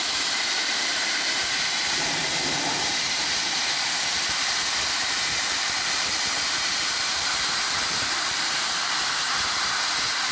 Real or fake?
fake